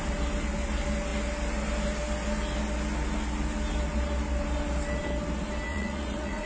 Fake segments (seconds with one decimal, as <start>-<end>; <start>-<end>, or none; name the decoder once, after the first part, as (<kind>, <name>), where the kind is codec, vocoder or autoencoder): 5.7-6.5 (vocoder, Vocos)